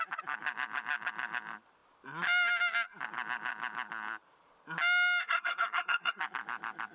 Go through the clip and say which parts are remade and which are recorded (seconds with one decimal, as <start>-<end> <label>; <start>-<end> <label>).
0.0-5.2 recorded; 5.2-6.2 remade; 6.2-6.9 recorded